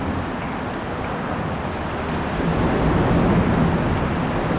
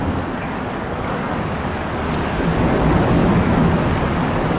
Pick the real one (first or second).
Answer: first